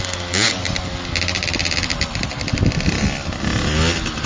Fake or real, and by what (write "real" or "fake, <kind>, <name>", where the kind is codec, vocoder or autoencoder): real